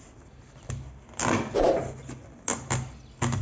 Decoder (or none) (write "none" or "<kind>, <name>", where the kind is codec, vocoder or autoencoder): none